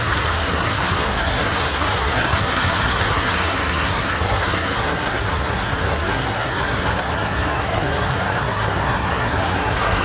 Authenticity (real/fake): fake